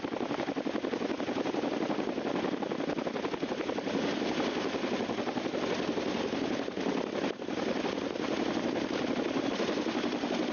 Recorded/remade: recorded